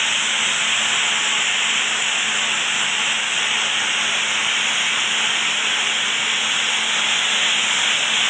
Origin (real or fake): real